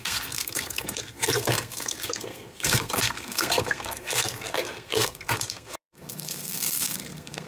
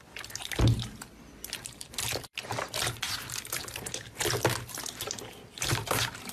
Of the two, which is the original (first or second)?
second